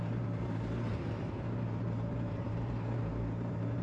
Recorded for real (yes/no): no